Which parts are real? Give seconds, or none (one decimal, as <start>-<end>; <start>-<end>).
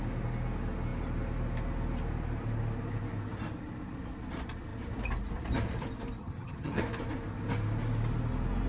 0.0-6.2; 6.8-8.7